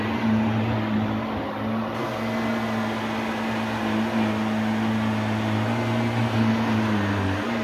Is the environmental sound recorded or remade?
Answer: recorded